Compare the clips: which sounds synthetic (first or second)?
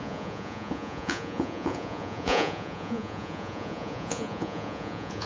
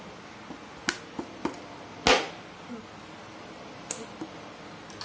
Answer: first